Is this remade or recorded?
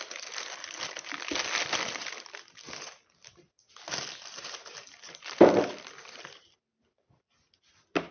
recorded